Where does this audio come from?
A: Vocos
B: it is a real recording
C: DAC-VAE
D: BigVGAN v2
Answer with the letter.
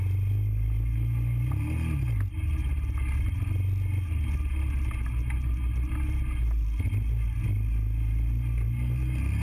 B